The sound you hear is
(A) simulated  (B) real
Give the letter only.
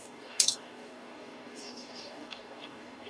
A